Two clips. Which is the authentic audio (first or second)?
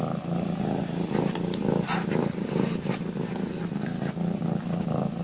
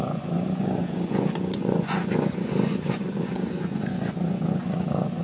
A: first